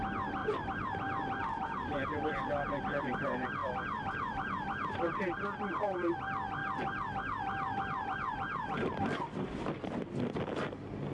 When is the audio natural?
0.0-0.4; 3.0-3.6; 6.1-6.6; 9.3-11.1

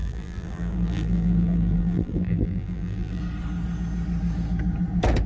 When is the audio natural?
3.2-5.3

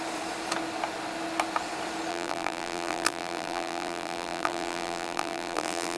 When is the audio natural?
0.0-2.1

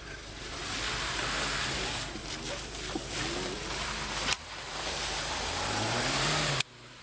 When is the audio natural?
0.6-1.7; 2.2-4.4

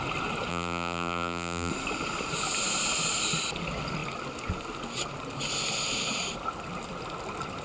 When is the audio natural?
0.0-0.5; 1.7-7.6